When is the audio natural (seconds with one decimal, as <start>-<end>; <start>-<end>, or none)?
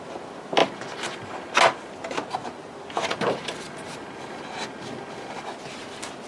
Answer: 0.0-6.3